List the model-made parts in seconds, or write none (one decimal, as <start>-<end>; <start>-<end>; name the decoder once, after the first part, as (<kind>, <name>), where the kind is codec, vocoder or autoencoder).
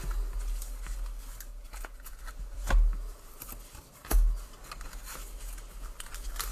1.5-2.2 (vocoder, Vocos)